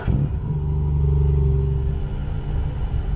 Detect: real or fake real